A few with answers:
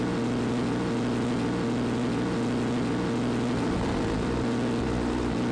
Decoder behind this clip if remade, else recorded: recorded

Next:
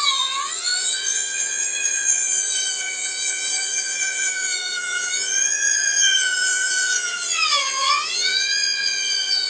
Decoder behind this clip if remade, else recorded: remade, vocoder, Vocos